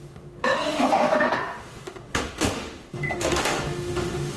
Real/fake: fake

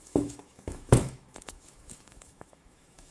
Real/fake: fake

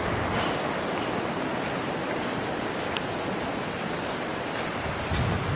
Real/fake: real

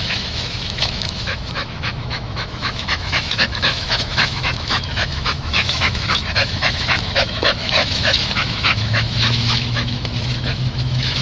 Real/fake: fake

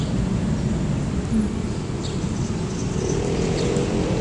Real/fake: real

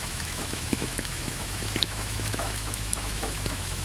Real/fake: fake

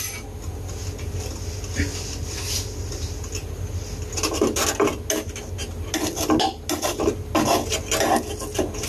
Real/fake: real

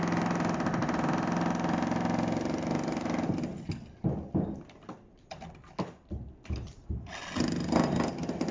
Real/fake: real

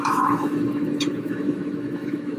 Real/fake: fake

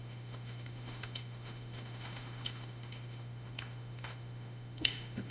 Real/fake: fake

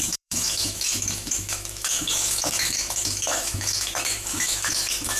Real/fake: fake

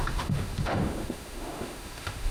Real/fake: fake